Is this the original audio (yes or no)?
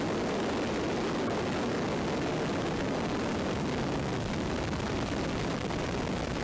yes